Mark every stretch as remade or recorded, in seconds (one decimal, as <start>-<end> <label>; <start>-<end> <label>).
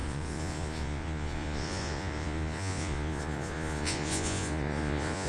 0.0-5.3 remade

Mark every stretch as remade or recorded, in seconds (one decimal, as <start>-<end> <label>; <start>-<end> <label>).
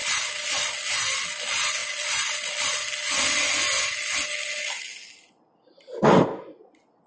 0.0-7.1 recorded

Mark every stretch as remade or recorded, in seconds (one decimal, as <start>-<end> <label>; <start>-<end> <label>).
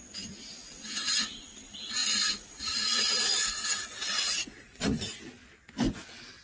0.0-0.6 recorded; 0.6-1.4 remade; 1.4-2.0 recorded; 2.0-5.2 remade; 5.2-6.4 recorded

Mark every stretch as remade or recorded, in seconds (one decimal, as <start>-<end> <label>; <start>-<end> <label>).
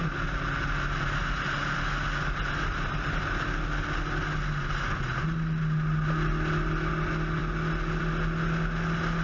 0.0-9.2 recorded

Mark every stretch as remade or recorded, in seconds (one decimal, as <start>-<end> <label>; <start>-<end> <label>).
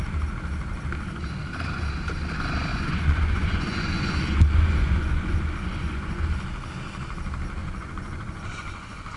0.0-2.7 recorded; 2.7-6.2 remade; 6.2-7.6 recorded; 7.6-9.2 remade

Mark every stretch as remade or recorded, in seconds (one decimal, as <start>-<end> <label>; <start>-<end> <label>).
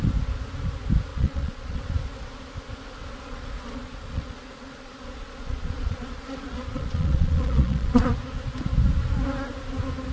0.0-1.1 recorded; 1.1-1.8 remade; 1.8-3.0 recorded; 3.0-8.1 remade; 8.1-10.1 recorded